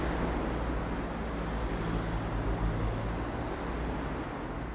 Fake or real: real